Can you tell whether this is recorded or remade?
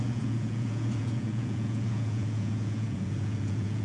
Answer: remade